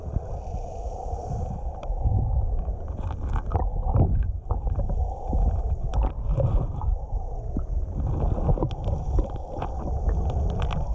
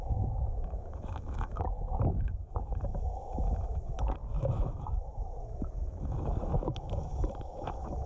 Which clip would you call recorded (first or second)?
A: first